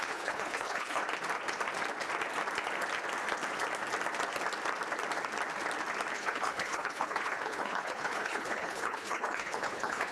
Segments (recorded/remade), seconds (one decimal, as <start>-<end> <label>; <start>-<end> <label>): 0.0-1.0 remade; 1.0-6.1 recorded; 6.1-10.1 remade